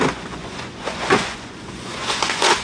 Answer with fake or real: fake